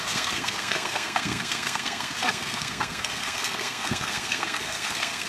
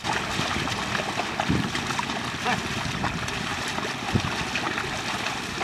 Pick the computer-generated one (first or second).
first